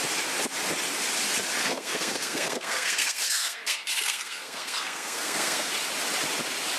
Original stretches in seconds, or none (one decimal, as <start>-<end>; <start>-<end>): 0.0-1.6; 5.7-6.8